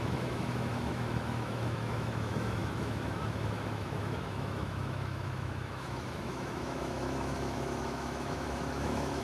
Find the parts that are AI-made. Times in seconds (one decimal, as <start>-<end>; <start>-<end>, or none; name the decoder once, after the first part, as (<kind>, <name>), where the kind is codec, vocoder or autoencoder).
0.0-9.2 (autoencoder, DAC-VAE)